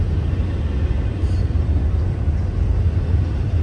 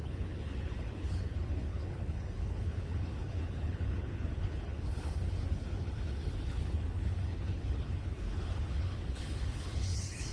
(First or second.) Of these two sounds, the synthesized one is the second